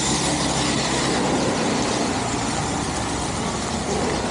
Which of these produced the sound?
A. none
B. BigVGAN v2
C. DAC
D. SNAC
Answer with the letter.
A